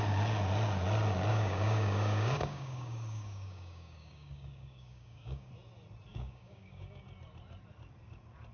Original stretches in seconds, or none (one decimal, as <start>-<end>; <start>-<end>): 0.0-1.3; 5.5-6.1; 7.0-8.5